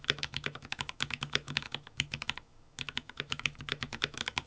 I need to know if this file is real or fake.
fake